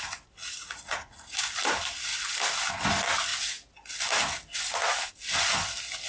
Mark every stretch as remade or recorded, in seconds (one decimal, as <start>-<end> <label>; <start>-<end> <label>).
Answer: 0.0-0.4 recorded; 0.4-1.4 remade; 1.4-6.1 recorded